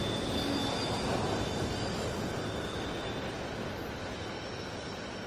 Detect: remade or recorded recorded